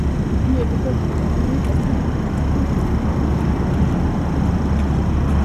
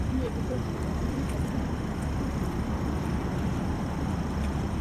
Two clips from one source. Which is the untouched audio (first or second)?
first